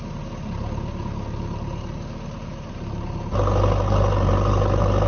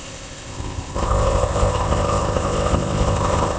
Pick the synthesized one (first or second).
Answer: second